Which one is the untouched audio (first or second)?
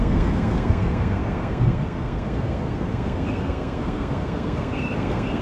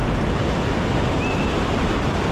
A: second